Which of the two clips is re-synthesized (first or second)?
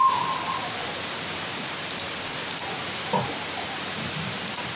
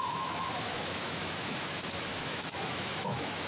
second